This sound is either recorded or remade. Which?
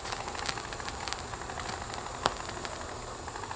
recorded